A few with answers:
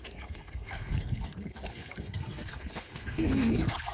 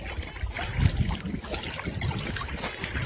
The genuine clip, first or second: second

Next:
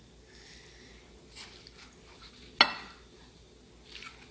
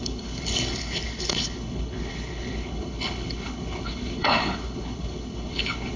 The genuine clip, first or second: first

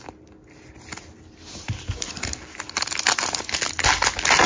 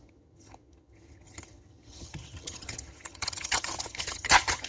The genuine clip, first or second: first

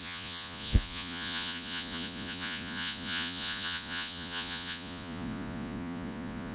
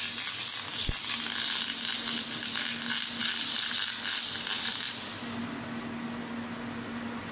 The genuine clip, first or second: second